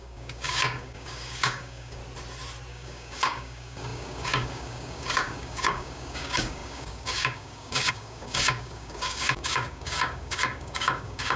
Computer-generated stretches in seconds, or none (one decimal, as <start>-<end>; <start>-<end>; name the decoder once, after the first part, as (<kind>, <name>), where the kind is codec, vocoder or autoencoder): 0.0-2.0 (codec, DAC); 2.7-11.4